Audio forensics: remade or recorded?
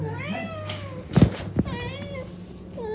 recorded